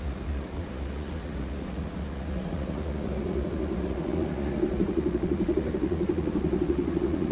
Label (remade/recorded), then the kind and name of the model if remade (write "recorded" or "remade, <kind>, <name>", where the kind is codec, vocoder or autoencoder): remade, vocoder, Vocos